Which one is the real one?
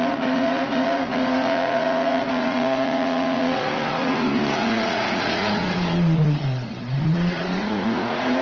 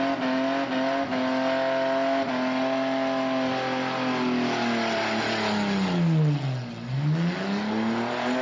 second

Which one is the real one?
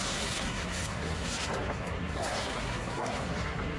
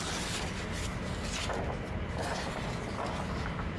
second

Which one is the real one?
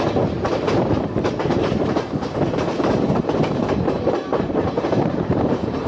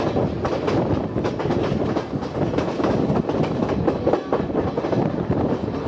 second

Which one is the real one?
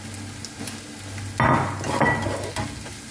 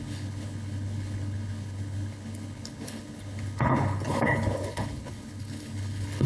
first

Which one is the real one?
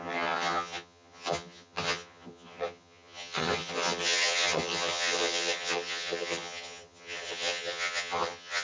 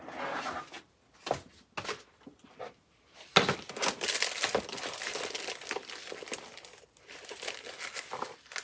second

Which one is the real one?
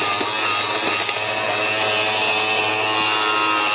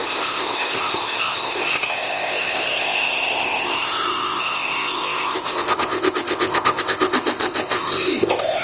first